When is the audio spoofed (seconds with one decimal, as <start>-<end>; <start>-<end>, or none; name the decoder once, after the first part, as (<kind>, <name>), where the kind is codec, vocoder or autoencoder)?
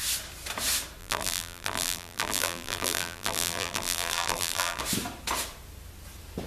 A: 1.0-4.8 (vocoder, BigVGAN v2)